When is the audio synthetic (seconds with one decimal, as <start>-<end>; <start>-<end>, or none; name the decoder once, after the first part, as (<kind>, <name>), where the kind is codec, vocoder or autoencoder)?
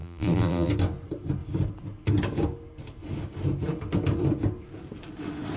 0.0-0.7 (vocoder, BigVGAN v2)